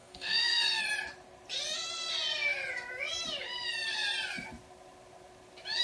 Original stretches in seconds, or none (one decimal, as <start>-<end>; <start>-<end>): 0.8-5.8